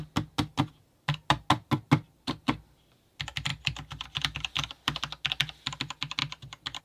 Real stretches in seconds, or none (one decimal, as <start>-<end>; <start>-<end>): 0.0-6.8